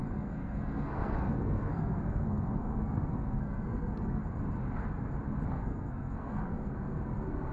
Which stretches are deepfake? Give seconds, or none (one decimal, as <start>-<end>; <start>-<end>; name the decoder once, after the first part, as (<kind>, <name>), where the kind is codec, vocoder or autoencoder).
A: 0.0-4.2 (codec, SNAC); 5.5-7.5